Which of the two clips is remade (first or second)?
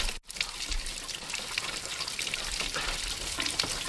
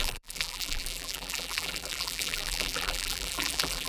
second